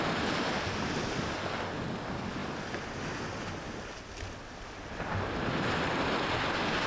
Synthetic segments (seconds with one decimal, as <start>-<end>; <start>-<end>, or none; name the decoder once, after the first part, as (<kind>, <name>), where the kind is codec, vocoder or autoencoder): none